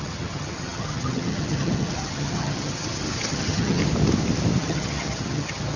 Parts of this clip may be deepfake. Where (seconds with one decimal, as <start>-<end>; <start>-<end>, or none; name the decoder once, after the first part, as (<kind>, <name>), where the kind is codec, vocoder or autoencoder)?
0.0-3.8 (vocoder, HiFi-GAN); 4.6-5.8